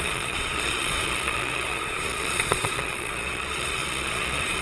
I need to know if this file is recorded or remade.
remade